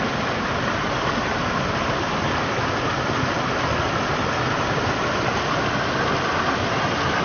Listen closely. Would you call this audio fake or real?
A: real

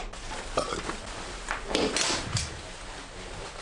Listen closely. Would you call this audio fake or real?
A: real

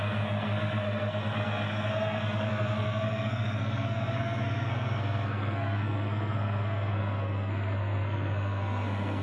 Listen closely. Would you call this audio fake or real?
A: fake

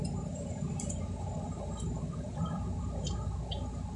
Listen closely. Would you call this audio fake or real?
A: real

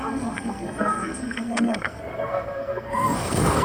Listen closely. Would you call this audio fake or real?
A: fake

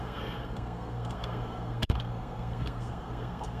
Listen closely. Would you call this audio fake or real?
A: fake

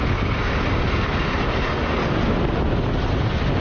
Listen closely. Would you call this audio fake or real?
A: real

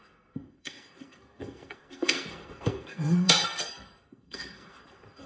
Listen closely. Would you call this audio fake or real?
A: fake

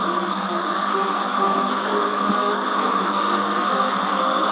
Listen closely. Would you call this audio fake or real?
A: fake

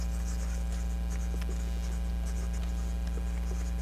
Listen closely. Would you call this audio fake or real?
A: real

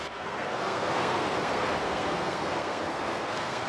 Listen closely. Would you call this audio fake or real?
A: fake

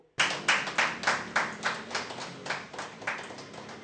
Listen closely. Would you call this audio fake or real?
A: real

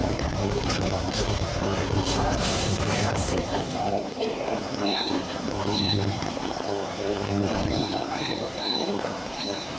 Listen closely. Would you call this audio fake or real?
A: fake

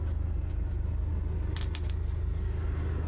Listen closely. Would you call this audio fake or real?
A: real